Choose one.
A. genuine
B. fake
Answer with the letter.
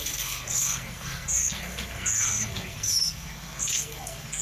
B